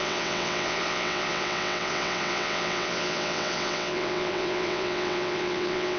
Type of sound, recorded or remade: remade